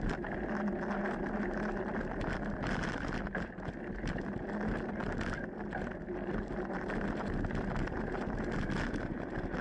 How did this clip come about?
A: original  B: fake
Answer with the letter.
A